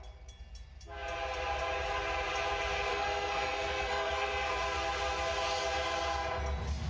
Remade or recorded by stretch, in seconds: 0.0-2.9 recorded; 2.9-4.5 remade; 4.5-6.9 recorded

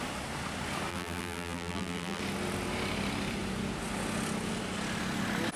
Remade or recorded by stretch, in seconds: 0.0-0.9 recorded; 0.9-2.2 remade; 2.2-5.6 recorded

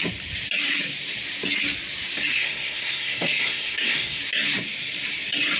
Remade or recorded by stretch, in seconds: 0.0-2.3 recorded; 2.3-4.2 remade; 4.2-5.6 recorded

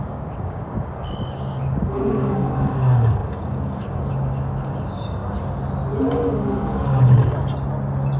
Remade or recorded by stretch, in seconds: 0.0-5.2 remade; 5.2-6.0 recorded; 6.0-7.5 remade; 7.5-8.2 recorded

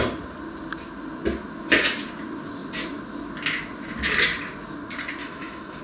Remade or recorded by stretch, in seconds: 0.0-5.2 recorded; 5.2-5.8 remade